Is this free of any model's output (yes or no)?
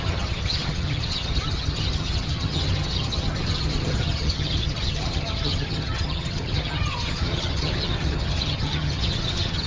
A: no